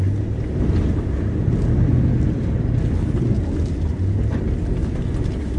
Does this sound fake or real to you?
real